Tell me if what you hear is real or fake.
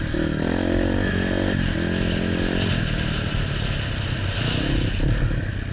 real